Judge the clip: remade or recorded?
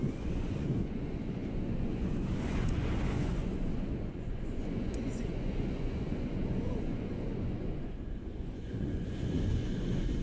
remade